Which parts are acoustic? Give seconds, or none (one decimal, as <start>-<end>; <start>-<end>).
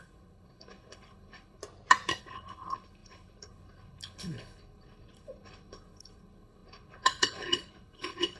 1.6-2.2